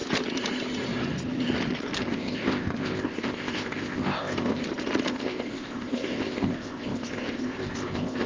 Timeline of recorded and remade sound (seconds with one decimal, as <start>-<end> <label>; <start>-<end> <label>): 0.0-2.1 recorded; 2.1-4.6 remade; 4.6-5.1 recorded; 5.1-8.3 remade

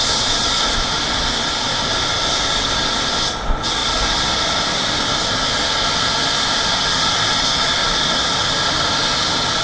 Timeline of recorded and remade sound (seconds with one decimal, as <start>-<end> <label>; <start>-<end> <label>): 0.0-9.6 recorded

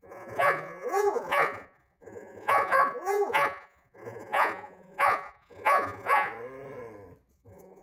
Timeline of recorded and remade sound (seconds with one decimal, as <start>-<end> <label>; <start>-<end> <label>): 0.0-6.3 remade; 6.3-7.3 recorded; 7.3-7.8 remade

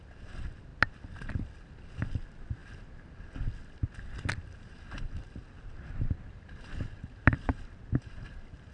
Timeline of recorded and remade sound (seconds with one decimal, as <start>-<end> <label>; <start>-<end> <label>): 0.0-8.7 recorded

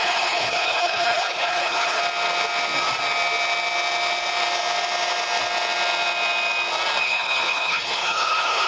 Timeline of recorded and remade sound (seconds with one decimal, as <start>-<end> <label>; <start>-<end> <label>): 0.0-2.0 remade; 2.0-7.0 recorded; 7.0-8.7 remade

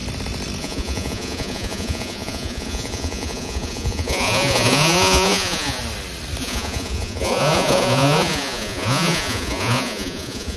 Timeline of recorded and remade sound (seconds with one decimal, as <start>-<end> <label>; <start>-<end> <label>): 0.0-0.6 recorded; 0.6-5.8 remade; 5.8-6.4 recorded; 6.4-10.6 remade

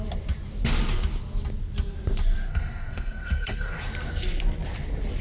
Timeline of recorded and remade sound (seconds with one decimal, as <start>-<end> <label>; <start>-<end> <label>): 0.0-2.5 recorded; 2.5-3.8 remade; 3.8-5.2 recorded

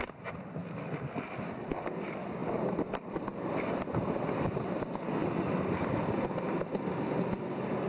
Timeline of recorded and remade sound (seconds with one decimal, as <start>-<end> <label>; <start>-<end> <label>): 0.0-0.6 remade; 0.6-2.0 recorded; 2.0-5.2 remade; 5.2-6.9 recorded; 6.9-7.9 remade